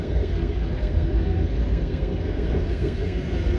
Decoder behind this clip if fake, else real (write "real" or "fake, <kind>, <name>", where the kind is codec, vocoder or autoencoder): fake, codec, SNAC